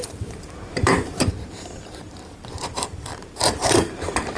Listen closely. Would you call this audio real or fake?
fake